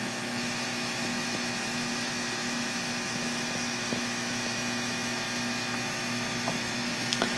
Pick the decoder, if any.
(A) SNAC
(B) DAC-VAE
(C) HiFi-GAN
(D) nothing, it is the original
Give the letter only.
B